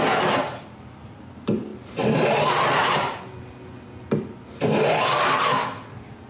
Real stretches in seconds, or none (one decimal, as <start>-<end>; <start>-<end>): 0.0-1.7; 3.4-6.3